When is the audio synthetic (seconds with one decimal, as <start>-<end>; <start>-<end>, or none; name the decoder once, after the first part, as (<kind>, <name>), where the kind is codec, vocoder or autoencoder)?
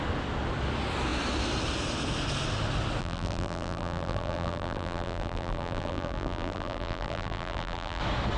3.0-8.0 (vocoder, BigVGAN v2)